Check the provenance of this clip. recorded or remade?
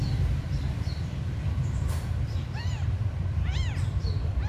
remade